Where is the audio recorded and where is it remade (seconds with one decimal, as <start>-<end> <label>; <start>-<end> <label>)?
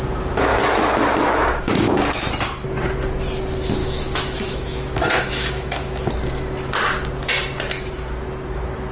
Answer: 0.0-0.5 recorded; 0.5-1.6 remade; 1.6-3.8 recorded; 3.8-6.1 remade; 6.1-8.9 recorded